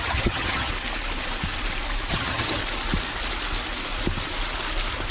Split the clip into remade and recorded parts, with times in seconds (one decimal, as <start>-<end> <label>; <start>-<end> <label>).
0.0-0.7 remade; 0.7-2.1 recorded; 2.1-2.6 remade; 2.6-5.1 recorded

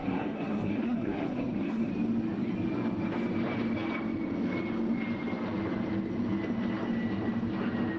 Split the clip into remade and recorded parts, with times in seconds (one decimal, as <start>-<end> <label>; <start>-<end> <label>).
0.0-1.9 remade; 1.9-8.0 recorded

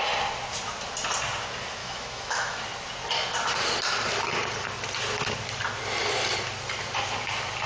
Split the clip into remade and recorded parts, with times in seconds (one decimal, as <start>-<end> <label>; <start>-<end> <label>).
0.0-1.8 recorded; 1.8-2.6 remade; 2.6-7.7 recorded

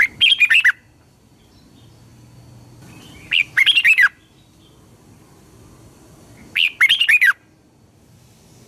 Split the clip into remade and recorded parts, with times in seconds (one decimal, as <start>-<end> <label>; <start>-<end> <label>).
0.0-8.7 recorded

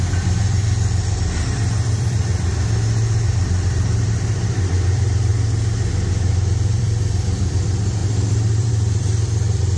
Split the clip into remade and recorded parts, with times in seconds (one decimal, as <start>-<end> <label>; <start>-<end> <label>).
0.0-2.3 remade; 2.3-3.3 recorded; 3.3-5.3 remade; 5.3-6.3 recorded; 6.3-9.8 remade

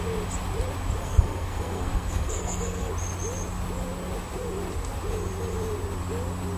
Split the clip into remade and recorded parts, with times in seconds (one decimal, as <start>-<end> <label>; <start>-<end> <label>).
0.0-1.0 recorded; 1.0-2.9 remade; 2.9-6.6 recorded

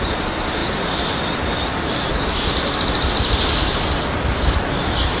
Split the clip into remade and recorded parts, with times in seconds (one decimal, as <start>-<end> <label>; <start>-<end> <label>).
0.0-5.2 recorded